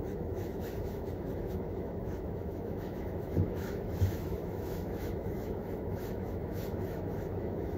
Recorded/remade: remade